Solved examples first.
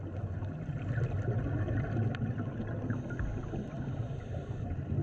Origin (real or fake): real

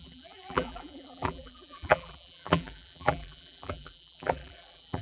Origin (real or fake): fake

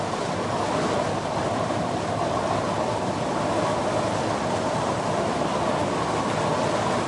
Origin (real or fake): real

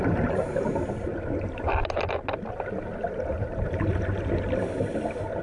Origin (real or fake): real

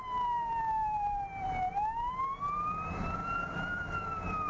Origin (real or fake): fake